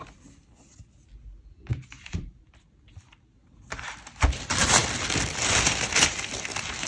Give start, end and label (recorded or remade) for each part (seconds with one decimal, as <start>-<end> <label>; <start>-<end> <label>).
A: 0.0-1.7 recorded; 1.7-2.4 remade; 2.4-6.9 recorded